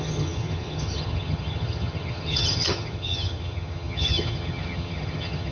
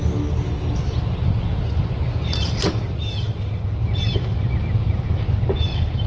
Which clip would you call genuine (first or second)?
second